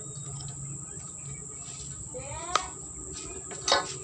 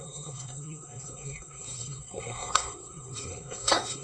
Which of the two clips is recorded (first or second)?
first